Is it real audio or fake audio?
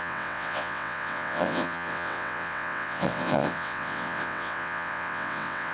fake